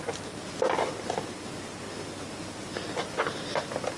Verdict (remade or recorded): recorded